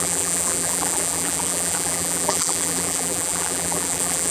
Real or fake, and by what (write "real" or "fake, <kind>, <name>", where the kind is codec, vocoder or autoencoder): fake, vocoder, BigVGAN v2